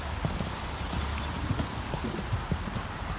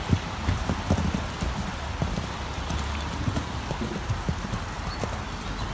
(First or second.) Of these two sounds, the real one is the second